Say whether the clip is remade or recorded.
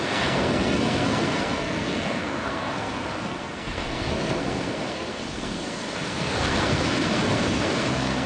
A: remade